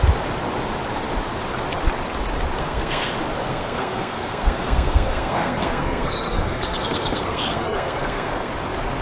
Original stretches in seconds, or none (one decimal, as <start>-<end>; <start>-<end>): 0.0-2.6; 3.1-3.5; 8.5-9.0